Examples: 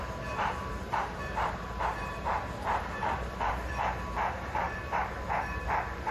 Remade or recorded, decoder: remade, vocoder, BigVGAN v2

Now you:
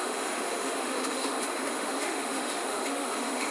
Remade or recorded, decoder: remade, autoencoder, DAC-VAE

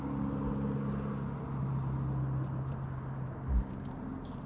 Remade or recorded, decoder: recorded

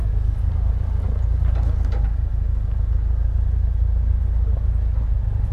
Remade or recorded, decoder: recorded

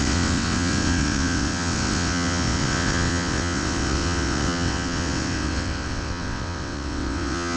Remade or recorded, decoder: remade, vocoder, WaveNeXt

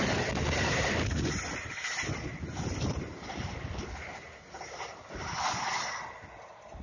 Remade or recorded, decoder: recorded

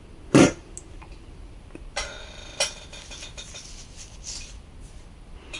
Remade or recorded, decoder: recorded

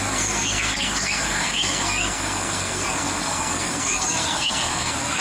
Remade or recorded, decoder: remade, codec, SNAC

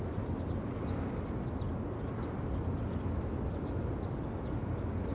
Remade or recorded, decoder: recorded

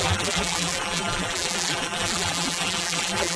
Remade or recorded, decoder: remade, vocoder, BigVGAN v2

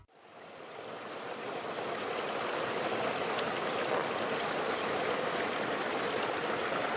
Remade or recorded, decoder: recorded